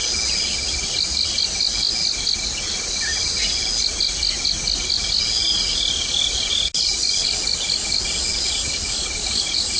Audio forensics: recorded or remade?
recorded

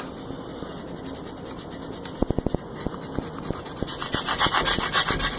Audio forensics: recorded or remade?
recorded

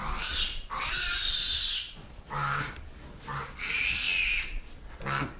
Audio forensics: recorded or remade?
recorded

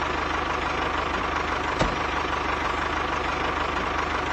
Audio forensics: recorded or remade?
recorded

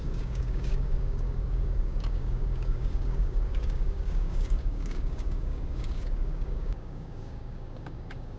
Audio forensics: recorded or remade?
remade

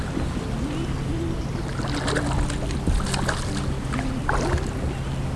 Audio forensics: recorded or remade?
recorded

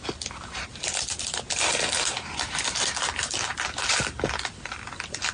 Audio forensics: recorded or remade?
recorded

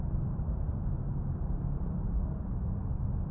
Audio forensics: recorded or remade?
recorded